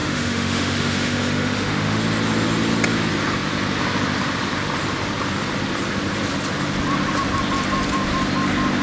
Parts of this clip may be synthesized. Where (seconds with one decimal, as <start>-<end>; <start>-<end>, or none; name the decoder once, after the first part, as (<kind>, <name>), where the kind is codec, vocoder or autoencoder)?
0.0-2.0 (autoencoder, DAC-VAE)